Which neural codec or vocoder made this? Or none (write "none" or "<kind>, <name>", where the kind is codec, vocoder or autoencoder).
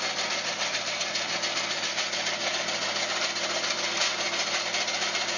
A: none